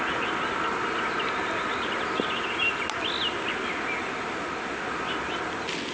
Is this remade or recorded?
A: recorded